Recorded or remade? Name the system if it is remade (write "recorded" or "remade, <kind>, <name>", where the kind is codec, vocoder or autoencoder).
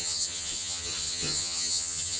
remade, vocoder, HiFi-GAN